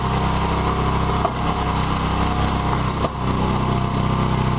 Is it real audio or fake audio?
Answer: real